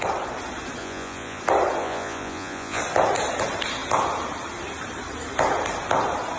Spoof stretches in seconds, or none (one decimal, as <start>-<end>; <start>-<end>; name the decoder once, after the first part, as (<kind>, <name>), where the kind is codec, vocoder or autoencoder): 0.8-1.4 (vocoder, Vocos); 1.8-2.8